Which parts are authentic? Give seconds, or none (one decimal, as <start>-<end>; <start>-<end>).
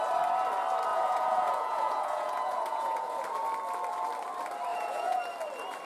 0.0-0.9; 3.2-4.7; 5.2-5.8